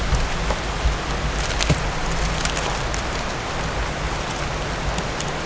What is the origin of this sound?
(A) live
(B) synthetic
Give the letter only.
A